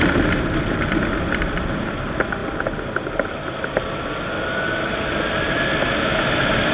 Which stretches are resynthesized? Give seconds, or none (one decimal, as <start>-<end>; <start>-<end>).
none